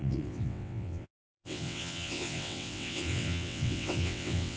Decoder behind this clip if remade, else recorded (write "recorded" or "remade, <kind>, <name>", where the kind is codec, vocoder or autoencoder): remade, vocoder, WaveNeXt